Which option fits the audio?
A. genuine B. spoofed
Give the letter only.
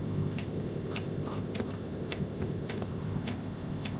B